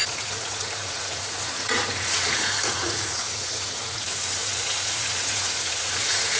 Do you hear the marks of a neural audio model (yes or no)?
yes